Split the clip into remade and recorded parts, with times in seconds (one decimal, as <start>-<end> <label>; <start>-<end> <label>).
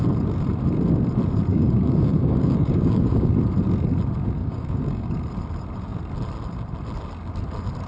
0.0-1.5 recorded; 1.5-3.3 remade; 3.3-4.4 recorded; 4.4-5.1 remade; 5.1-7.9 recorded